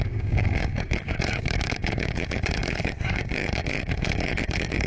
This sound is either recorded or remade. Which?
remade